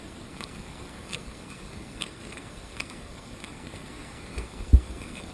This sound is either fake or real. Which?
fake